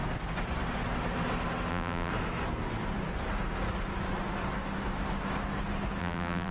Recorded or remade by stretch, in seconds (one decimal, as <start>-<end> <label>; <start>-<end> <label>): 0.0-1.7 recorded; 1.7-2.1 remade; 2.1-6.0 recorded; 6.0-6.5 remade